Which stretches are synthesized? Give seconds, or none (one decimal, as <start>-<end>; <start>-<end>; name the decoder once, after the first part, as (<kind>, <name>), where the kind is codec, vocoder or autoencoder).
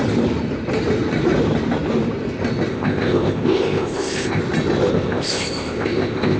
2.7-4.4 (codec, ZipCodec); 4.9-6.4